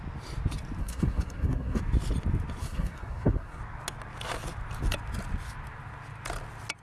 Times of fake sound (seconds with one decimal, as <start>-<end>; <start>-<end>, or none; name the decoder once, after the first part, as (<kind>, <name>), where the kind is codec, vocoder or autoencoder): 0.8-1.8 (codec, SNAC); 2.6-3.6